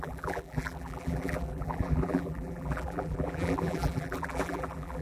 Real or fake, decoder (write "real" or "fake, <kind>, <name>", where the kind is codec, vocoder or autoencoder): fake, vocoder, BigVGAN v2